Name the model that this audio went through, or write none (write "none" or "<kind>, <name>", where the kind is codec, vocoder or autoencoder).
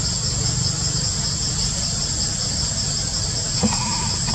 none